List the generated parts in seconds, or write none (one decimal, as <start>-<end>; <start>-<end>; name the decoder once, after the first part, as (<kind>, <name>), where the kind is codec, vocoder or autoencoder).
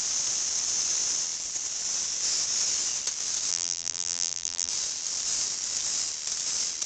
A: 3.5-4.7 (vocoder, BigVGAN v2)